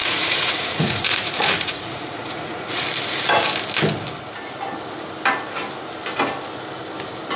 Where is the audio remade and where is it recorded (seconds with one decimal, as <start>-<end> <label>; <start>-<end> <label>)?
0.0-2.8 remade; 2.8-7.4 recorded